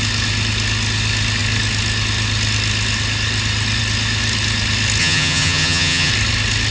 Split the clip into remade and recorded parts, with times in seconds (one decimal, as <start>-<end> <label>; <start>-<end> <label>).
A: 0.0-5.0 recorded; 5.0-6.1 remade; 6.1-6.7 recorded